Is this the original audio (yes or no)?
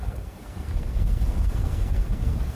no